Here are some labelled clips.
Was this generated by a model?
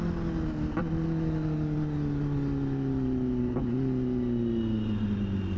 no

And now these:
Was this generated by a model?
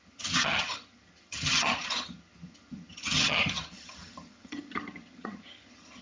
yes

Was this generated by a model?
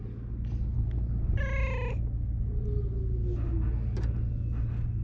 no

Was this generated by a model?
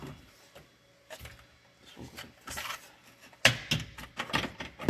no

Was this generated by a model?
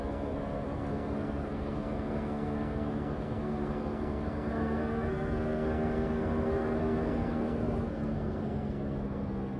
yes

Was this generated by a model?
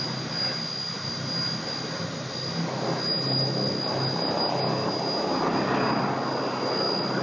no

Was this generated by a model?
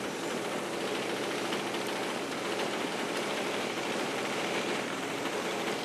yes